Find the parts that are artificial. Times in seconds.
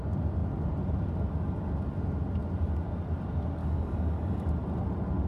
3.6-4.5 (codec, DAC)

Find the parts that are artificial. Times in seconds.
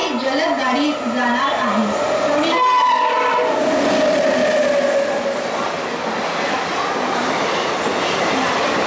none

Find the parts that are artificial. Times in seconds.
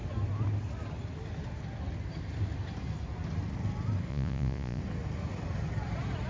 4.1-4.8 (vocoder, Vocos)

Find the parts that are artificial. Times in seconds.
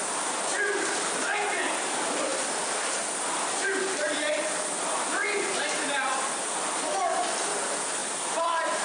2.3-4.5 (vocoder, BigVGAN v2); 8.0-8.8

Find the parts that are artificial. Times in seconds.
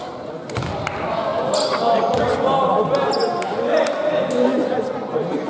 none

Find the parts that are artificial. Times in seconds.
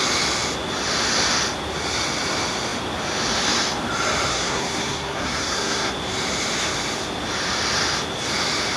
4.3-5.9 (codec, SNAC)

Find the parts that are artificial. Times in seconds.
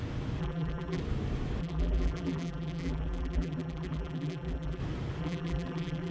0.4-1.0 (vocoder, BigVGAN v2); 1.6-4.8; 5.2-6.1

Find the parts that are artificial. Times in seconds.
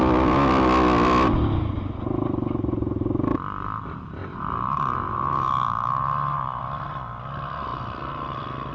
4.2-6.6 (vocoder, BigVGAN v2)